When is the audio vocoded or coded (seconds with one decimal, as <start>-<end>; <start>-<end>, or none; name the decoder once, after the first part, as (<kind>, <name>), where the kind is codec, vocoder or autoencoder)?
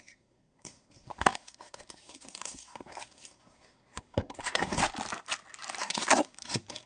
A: 0.0-4.8 (codec, SNAC); 5.8-6.9